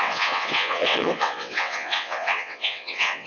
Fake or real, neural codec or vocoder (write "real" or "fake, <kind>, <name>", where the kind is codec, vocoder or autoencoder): fake, vocoder, WaveNeXt